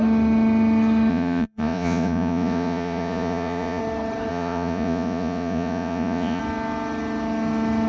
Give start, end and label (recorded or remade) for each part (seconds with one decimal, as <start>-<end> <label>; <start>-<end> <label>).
0.0-1.1 recorded; 1.1-3.8 remade; 3.8-4.3 recorded; 4.3-6.4 remade; 6.4-7.9 recorded